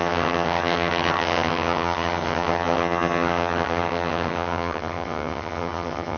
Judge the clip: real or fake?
fake